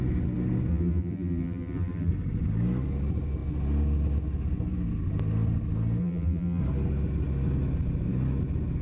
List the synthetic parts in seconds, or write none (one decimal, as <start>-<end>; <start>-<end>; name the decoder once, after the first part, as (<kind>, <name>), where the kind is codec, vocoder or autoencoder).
0.7-2.1 (vocoder, BigVGAN v2); 6.0-6.6